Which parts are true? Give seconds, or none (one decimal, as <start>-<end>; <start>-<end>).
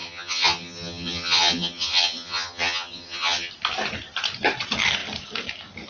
3.5-5.9